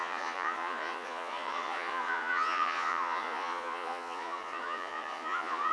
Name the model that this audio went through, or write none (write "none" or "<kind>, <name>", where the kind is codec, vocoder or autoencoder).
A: vocoder, Vocos